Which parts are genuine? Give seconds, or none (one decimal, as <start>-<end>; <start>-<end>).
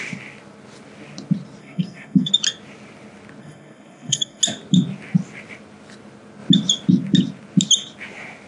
0.0-1.6; 2.3-3.4; 4.4-8.5